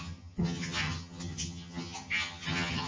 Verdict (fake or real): fake